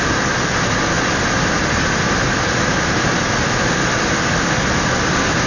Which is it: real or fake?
real